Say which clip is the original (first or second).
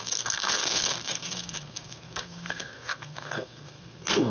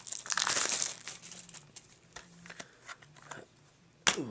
second